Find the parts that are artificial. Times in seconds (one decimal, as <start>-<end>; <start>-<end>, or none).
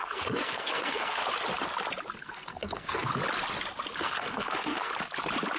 0.0-1.2; 2.2-3.1; 4.0-4.9